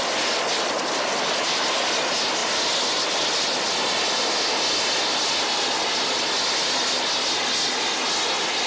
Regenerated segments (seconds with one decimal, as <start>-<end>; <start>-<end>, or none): none